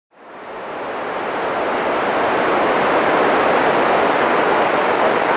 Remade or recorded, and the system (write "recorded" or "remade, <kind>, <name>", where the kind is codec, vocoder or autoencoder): recorded